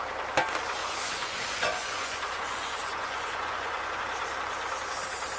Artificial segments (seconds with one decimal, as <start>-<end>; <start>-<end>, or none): 0.8-4.0

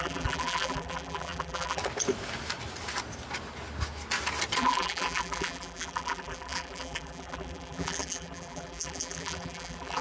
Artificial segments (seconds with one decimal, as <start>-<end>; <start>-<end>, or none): 0.0-1.8; 4.6-10.0

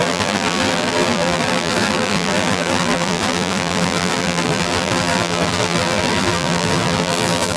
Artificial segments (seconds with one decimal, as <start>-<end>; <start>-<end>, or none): 0.0-7.6

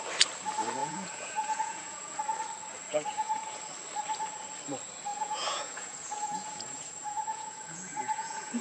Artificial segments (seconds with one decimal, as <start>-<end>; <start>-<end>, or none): 0.8-2.2; 2.9-3.6; 5.1-8.6

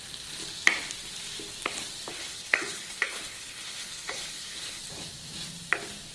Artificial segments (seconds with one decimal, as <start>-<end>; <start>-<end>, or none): 2.1-4.8

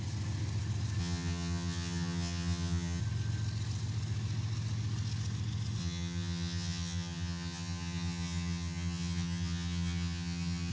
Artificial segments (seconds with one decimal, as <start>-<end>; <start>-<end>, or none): 1.0-3.0; 5.8-10.7